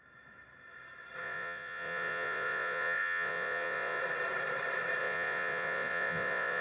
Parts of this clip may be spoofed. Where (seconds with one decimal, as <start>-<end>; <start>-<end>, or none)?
1.2-4.0; 5.0-6.6